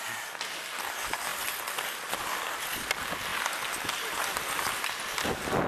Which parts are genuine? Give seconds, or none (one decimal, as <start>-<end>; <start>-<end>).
0.0-5.7

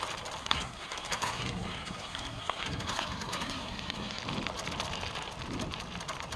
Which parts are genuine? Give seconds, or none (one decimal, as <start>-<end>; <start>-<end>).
0.0-0.4; 4.2-6.4